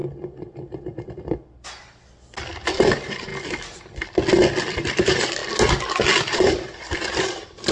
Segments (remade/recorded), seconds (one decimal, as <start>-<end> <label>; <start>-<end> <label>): 0.0-2.9 recorded; 2.9-3.3 remade; 3.3-4.7 recorded; 4.7-5.4 remade; 5.4-6.3 recorded; 6.3-7.7 remade